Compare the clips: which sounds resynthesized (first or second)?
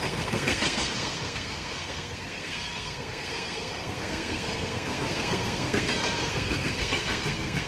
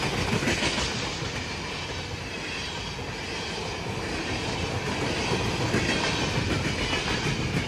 first